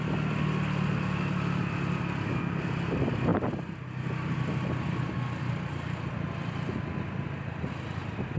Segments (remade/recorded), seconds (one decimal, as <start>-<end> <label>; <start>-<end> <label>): 0.0-8.4 recorded